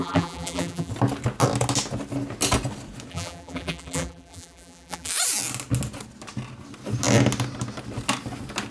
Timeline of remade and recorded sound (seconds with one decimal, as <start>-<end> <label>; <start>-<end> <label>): 0.0-0.9 remade; 0.9-3.1 recorded; 3.1-5.1 remade; 5.1-8.7 recorded